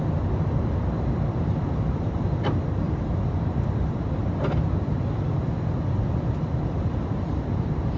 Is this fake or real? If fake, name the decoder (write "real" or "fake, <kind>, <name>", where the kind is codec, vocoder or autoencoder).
real